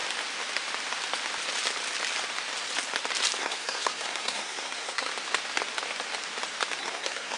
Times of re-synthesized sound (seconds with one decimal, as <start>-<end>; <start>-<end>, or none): 3.4-5.1; 6.8-7.4

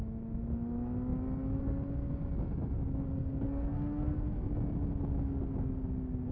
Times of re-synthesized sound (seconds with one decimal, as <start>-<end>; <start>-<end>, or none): 3.2-4.5

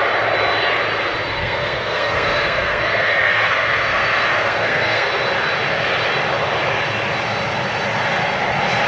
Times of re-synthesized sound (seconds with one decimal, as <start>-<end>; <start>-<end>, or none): 1.3-5.2

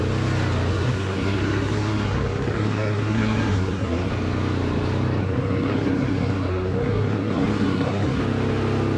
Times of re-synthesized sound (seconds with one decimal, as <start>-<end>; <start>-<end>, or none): 0.7-4.1; 5.2-8.2